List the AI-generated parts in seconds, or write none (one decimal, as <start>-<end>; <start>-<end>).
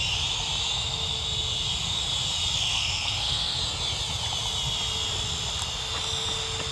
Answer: 2.7-3.6